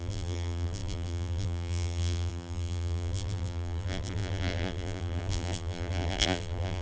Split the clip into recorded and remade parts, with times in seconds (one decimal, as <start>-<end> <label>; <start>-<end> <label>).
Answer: 0.0-6.8 remade